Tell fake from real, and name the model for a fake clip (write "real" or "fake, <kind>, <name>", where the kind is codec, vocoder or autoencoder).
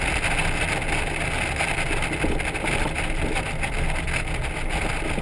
real